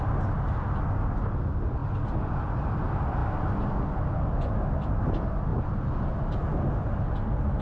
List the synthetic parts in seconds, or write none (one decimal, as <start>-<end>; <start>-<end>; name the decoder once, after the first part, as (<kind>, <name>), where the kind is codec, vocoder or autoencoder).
none